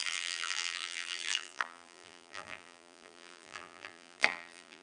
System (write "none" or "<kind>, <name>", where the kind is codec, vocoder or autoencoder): vocoder, BigVGAN v2